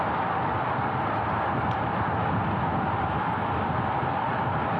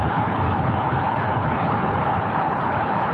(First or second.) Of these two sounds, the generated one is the second